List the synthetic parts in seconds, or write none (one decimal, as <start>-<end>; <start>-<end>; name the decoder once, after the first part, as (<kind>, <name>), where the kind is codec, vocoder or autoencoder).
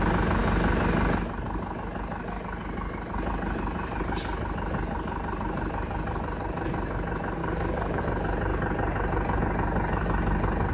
7.4-8.0 (codec, DAC)